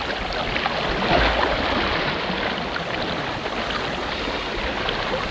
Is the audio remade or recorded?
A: recorded